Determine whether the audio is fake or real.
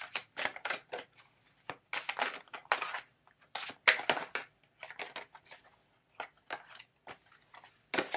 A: real